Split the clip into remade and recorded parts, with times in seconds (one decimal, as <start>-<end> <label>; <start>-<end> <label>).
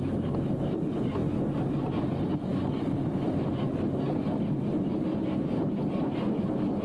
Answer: 0.0-6.8 recorded